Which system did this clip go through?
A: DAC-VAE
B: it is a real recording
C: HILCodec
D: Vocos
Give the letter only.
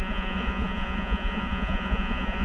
D